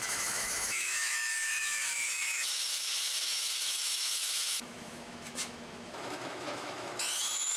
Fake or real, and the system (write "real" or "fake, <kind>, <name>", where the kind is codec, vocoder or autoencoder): fake, autoencoder, DAC-VAE